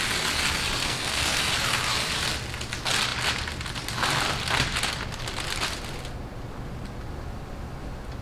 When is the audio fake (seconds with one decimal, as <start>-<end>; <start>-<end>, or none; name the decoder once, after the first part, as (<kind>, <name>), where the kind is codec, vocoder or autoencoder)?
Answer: 0.8-1.5 (codec, SNAC)